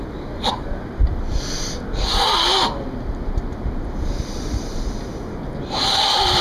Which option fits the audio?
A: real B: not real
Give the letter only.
A